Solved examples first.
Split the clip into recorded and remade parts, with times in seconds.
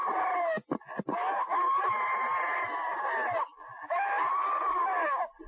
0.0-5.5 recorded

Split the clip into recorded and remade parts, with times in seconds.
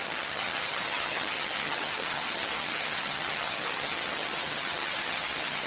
0.0-5.7 remade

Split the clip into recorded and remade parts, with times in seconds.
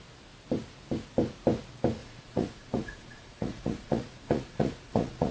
0.0-2.0 recorded; 2.0-5.3 remade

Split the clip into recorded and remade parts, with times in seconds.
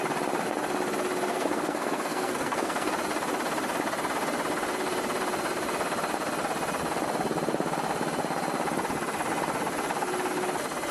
0.0-1.3 recorded; 1.3-2.9 remade; 2.9-10.9 recorded